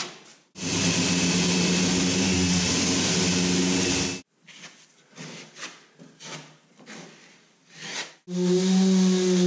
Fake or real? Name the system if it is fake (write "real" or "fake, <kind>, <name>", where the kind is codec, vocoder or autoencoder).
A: real